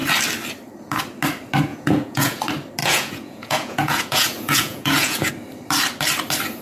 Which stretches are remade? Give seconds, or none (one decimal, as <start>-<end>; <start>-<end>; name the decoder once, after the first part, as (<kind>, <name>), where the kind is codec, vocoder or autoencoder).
1.7-2.4 (vocoder, Vocos); 2.8-5.3